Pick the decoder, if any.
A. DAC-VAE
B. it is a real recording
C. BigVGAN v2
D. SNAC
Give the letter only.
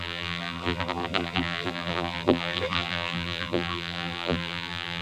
C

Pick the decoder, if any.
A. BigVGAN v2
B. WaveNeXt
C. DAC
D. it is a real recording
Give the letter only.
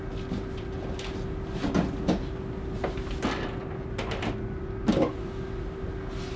D